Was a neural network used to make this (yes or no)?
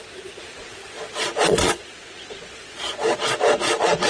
yes